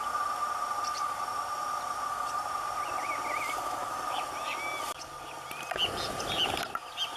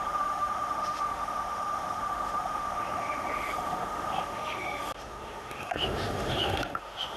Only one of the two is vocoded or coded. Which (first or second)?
second